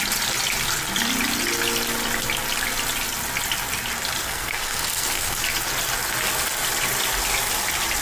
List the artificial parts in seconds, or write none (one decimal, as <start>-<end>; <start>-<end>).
4.2-5.4